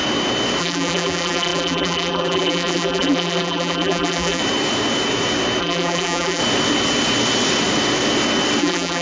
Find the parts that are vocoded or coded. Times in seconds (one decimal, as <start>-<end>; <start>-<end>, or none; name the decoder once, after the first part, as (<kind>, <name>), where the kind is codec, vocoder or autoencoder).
0.6-4.4 (vocoder, BigVGAN v2); 5.6-6.4; 8.6-9.0